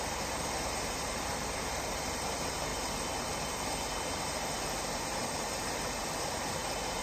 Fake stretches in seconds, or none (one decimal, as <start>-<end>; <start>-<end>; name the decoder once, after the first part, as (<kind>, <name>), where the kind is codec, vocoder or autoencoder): 0.0-2.7 (vocoder, BigVGAN v2); 3.2-7.0